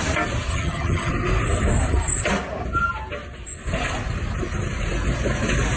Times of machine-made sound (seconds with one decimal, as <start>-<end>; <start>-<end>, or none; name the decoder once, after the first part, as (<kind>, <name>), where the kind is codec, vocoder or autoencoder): 0.5-1.1 (vocoder, HiFi-GAN)